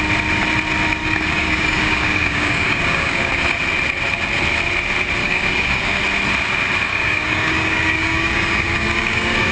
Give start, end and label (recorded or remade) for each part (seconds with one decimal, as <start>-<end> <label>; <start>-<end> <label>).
0.0-1.0 recorded; 1.0-3.3 remade; 3.3-5.2 recorded; 5.2-6.0 remade; 6.0-6.9 recorded; 6.9-9.5 remade